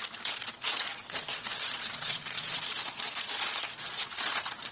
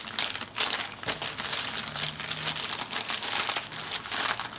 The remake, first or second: first